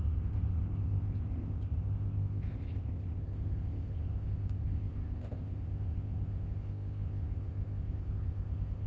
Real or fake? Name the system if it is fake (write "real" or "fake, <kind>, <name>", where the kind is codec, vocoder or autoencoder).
fake, codec, ZipCodec